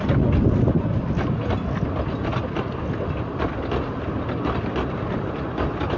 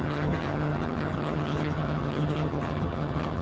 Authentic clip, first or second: first